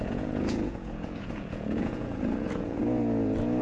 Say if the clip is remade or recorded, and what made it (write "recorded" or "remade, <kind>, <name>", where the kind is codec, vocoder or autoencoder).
remade, vocoder, Vocos